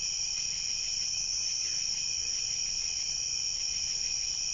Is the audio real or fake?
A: fake